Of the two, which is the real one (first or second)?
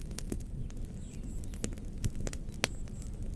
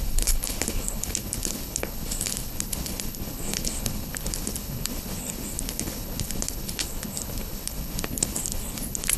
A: first